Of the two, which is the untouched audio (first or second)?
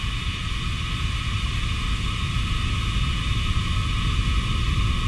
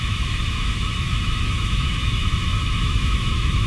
first